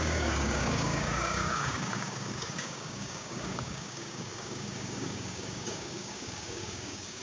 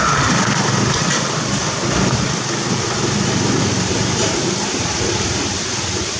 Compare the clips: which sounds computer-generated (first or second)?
first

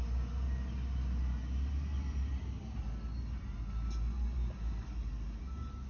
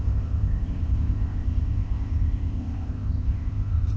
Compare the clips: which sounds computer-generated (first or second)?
second